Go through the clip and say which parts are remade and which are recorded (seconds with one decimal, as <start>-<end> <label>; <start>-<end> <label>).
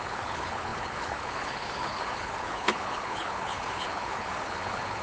0.0-5.0 remade